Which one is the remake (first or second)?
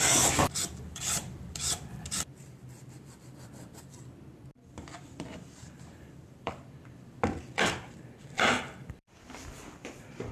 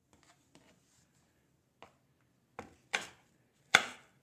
first